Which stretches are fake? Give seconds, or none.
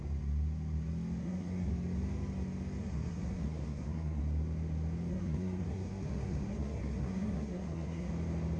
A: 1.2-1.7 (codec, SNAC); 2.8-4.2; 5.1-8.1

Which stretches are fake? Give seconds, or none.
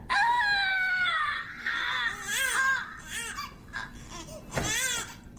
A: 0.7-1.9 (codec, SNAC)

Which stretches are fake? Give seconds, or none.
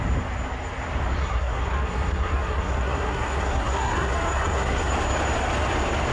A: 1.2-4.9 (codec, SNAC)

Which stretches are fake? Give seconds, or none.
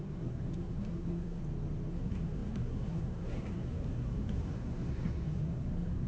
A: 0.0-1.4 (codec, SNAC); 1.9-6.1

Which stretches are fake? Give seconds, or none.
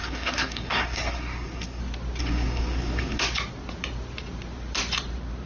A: 0.0-1.8 (codec, SNAC); 2.2-3.2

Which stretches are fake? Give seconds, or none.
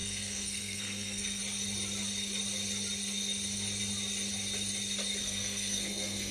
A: 0.0-1.4 (codec, SNAC); 5.2-6.3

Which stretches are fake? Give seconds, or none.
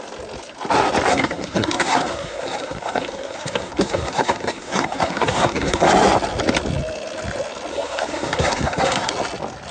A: 1.1-5.9 (codec, SNAC); 7.7-9.1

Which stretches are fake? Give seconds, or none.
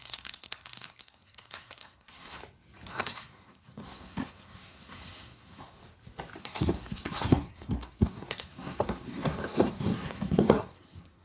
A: 0.0-2.4 (codec, SNAC); 2.9-5.8; 6.4-11.2